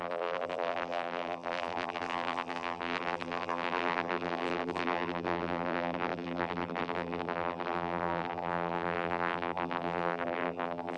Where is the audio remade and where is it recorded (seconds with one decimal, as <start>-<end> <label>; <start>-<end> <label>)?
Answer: 0.0-11.0 remade